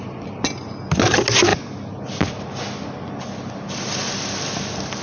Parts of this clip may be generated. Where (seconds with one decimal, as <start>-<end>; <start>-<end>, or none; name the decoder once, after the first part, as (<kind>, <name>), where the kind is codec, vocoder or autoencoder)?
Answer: none